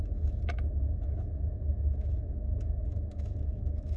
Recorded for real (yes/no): no